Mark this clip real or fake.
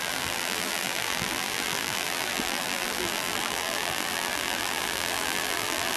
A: fake